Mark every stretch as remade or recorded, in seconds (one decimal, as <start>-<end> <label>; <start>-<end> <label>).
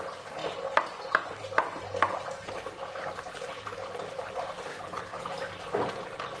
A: 0.0-4.7 recorded; 4.7-5.3 remade; 5.3-6.4 recorded